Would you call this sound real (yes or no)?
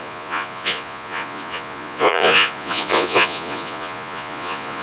no